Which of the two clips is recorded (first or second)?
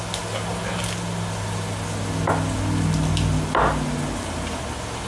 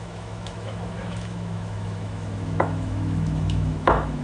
first